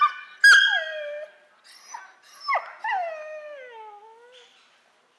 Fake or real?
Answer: real